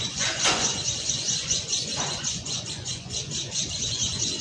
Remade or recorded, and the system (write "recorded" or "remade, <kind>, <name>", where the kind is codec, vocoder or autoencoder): remade, vocoder, Vocos